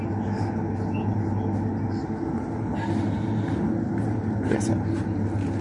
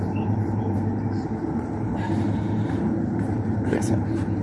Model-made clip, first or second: second